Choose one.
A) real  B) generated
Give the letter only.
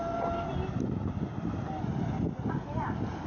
A